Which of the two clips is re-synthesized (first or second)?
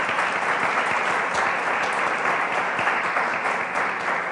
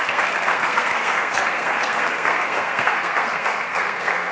second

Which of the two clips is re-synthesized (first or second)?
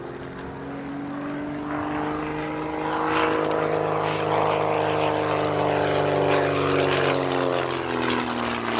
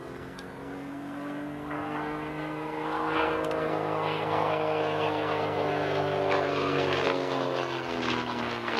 second